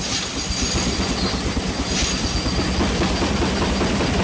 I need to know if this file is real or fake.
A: real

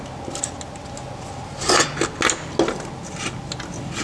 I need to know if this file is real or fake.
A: real